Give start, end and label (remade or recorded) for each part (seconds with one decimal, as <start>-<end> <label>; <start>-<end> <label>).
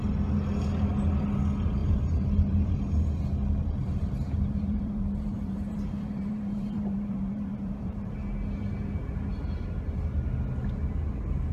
0.0-1.8 recorded; 1.8-2.7 remade; 2.7-3.8 recorded; 3.8-8.1 remade; 8.1-11.5 recorded